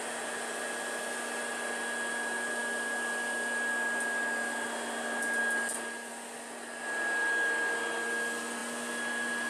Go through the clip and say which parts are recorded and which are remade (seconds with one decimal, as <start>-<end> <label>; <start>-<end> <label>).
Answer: 0.0-9.5 recorded